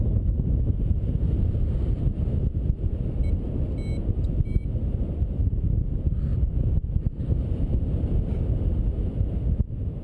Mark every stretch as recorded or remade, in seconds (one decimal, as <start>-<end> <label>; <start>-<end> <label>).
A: 0.0-10.0 recorded